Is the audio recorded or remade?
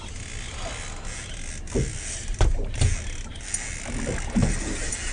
recorded